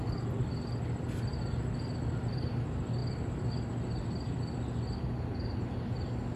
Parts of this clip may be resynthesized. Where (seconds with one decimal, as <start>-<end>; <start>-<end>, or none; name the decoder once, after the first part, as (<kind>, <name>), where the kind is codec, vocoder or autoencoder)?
3.0-3.5 (vocoder, BigVGAN v2)